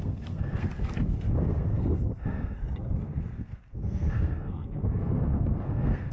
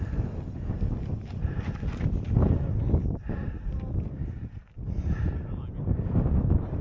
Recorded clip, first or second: second